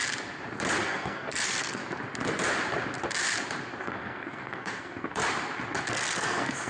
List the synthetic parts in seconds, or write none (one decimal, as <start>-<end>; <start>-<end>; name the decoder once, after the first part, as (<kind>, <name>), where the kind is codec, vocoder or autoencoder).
0.8-1.8 (codec, SNAC); 3.8-5.2; 5.9-6.7